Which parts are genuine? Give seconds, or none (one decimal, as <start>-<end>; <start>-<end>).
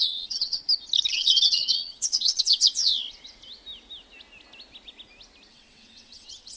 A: 0.6-1.1; 2.9-5.5